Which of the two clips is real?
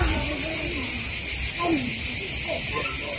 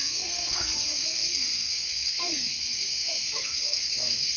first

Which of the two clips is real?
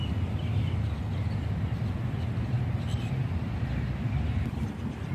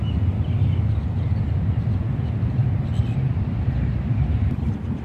first